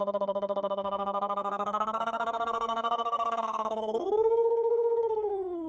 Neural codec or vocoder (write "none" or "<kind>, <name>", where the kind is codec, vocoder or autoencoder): codec, SNAC